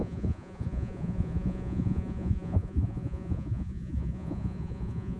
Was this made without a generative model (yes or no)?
no